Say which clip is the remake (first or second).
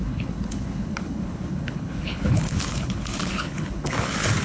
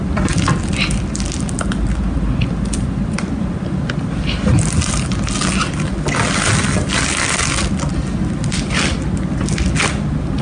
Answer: first